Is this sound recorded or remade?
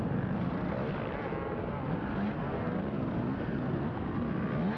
recorded